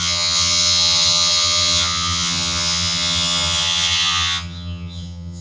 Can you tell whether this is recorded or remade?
remade